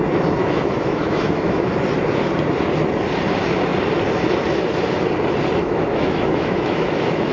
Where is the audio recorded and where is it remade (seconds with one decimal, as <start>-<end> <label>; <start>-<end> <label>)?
0.0-0.4 recorded; 0.4-1.7 remade; 1.7-5.6 recorded; 5.6-7.3 remade